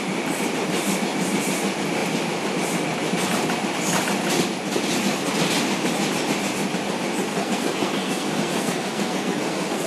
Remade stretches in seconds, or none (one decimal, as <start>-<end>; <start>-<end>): 7.3-9.9